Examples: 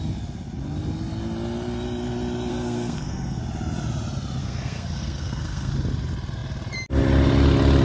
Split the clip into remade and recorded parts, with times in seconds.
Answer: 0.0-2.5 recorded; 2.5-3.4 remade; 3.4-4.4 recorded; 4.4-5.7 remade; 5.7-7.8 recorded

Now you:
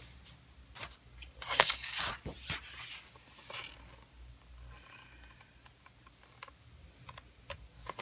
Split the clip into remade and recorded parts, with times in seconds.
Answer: 0.0-1.5 recorded; 1.5-2.1 remade; 2.1-8.0 recorded